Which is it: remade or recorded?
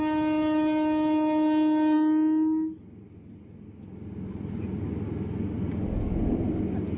recorded